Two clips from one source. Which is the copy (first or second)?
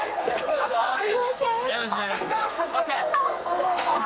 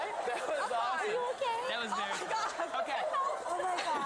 first